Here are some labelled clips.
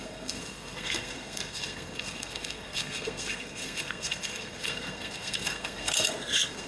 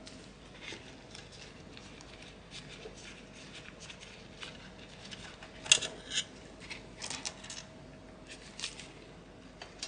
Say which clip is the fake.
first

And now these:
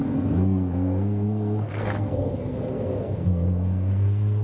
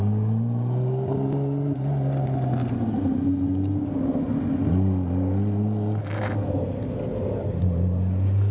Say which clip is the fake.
first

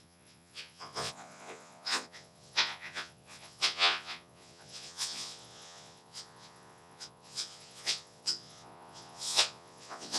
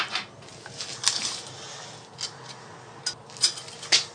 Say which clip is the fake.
first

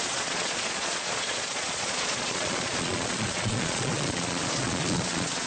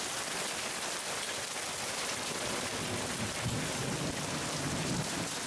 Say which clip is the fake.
first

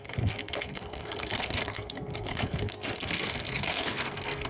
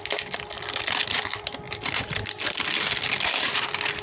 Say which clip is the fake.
first